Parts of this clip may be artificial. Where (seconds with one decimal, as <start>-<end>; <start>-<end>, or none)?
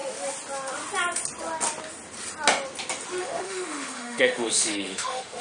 3.2-5.4